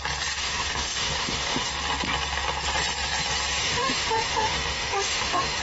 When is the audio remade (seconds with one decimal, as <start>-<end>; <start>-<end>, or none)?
0.4-1.7; 3.6-5.6